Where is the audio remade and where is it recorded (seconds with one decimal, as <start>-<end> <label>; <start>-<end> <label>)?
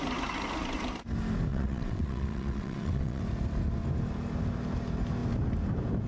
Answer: 0.0-1.5 recorded; 1.5-3.2 remade; 3.2-6.1 recorded